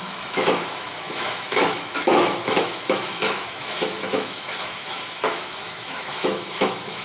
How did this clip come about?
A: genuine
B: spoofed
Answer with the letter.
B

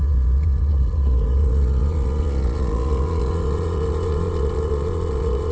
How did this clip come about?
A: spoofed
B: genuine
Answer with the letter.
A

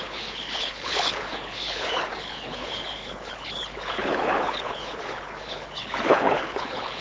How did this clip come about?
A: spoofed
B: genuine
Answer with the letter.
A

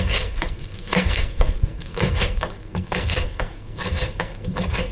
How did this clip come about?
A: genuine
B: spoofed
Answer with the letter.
B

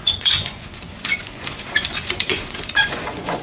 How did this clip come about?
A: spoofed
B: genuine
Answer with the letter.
A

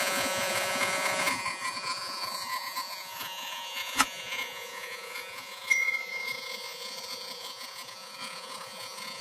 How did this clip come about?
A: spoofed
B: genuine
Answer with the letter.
A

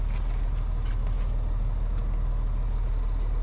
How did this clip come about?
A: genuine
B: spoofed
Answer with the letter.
A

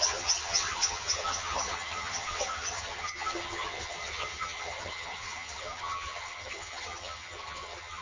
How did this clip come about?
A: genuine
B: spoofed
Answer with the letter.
B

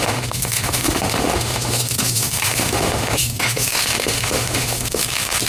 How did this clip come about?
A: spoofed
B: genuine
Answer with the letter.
A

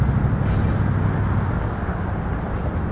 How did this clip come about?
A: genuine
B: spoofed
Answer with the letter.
A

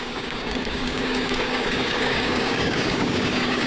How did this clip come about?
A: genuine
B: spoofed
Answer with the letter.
B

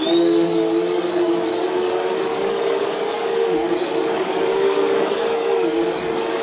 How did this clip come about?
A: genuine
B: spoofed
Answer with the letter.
B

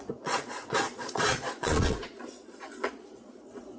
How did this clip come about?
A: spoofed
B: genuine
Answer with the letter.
A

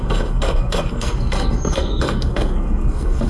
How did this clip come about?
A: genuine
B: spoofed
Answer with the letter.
B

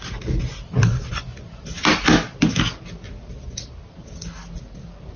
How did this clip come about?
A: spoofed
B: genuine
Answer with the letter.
B